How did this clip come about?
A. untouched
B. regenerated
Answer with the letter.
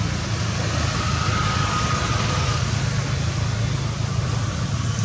A